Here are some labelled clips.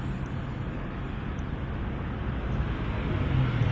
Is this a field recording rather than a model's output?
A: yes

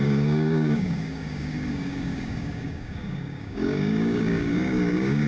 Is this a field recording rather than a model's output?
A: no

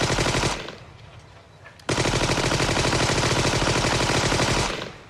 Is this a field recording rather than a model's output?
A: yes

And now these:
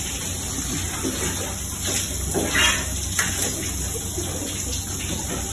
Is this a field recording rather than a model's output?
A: yes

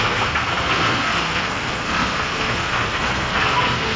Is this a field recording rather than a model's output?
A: no